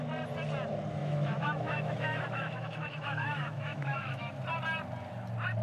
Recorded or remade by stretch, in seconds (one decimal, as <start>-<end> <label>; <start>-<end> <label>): 0.0-1.0 recorded; 1.0-4.4 remade; 4.4-5.6 recorded

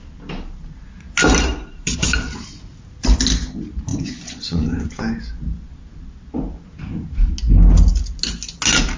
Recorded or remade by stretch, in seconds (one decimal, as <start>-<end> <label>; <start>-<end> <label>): 0.0-3.9 recorded; 3.9-5.0 remade; 5.0-9.0 recorded

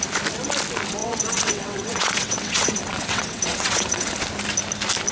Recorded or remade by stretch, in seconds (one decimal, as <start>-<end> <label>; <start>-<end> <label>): 0.0-1.0 recorded; 1.0-4.1 remade; 4.1-5.1 recorded